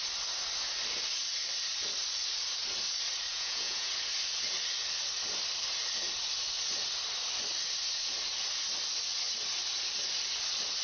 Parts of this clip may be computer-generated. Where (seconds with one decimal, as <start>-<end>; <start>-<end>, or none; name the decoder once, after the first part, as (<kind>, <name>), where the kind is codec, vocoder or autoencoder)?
3.3-3.9 (vocoder, Vocos)